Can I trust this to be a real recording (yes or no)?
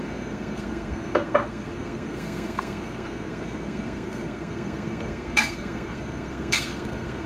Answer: no